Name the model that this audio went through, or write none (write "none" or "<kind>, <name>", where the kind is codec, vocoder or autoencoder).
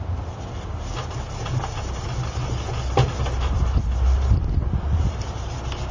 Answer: none